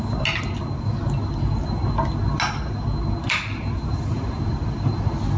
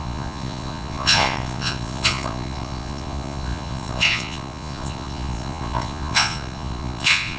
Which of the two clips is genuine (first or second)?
first